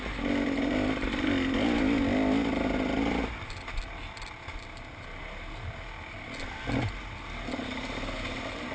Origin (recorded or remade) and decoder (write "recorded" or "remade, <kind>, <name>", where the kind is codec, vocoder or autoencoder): recorded